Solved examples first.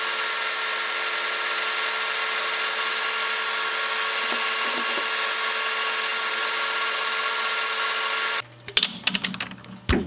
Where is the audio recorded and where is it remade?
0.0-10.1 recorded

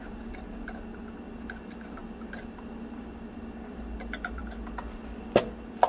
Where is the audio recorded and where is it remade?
0.0-5.9 recorded

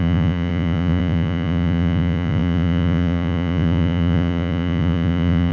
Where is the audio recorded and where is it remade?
0.0-5.5 remade

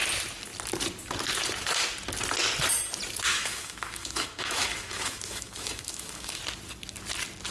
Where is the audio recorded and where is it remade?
0.0-3.3 recorded; 3.3-6.4 remade; 6.4-7.5 recorded

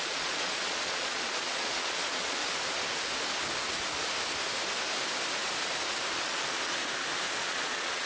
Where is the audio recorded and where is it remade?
0.0-2.4 remade; 2.4-6.1 recorded; 6.1-6.8 remade; 6.8-7.3 recorded; 7.3-8.1 remade